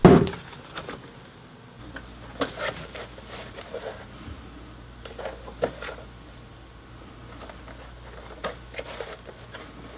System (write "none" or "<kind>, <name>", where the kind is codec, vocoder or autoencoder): none